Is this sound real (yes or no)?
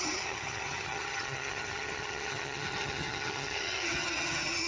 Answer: no